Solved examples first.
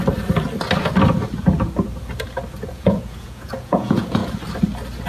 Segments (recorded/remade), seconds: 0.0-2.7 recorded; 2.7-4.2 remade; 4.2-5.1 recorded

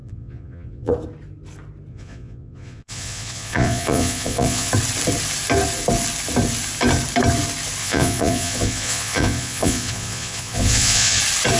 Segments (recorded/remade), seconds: 0.0-0.9 remade; 0.9-1.9 recorded; 1.9-4.7 remade; 4.7-7.8 recorded; 7.8-11.2 remade; 11.2-11.6 recorded

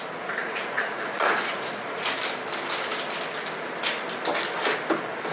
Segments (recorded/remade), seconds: 0.0-0.4 recorded; 0.4-2.2 remade; 2.2-5.3 recorded